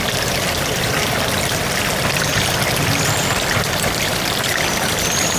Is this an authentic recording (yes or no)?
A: no